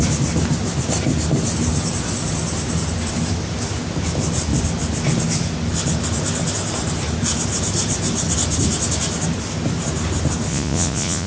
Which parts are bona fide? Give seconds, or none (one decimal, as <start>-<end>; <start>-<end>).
0.0-10.5